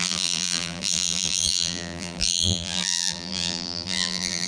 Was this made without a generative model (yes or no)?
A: no